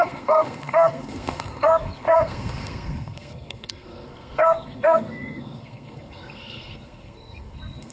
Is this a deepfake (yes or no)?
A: yes